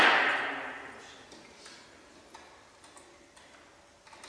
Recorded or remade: recorded